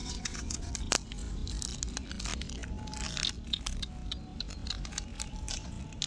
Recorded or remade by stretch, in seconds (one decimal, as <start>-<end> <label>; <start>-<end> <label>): 0.0-0.7 remade; 0.7-6.1 recorded